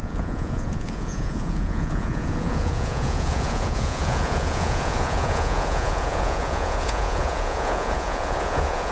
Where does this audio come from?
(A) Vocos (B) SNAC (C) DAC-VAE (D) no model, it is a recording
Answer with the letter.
A